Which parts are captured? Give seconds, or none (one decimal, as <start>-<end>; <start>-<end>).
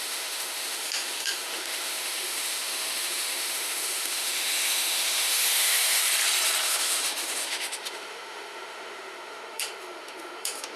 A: 6.0-6.6